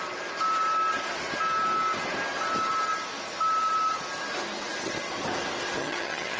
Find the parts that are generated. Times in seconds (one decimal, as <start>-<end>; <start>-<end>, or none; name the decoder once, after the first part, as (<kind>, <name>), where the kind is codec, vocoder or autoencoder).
5.8-6.4 (vocoder, HiFi-GAN)